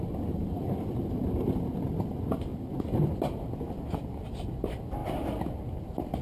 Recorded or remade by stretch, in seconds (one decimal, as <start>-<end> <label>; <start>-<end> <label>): 0.0-2.5 remade; 2.5-4.2 recorded; 4.2-6.2 remade